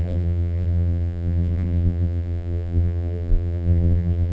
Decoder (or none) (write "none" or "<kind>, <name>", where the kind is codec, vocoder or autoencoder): vocoder, BigVGAN v2